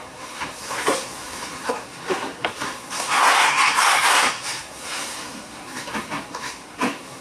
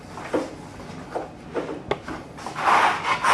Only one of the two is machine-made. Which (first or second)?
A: first